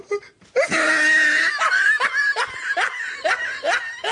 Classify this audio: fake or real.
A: real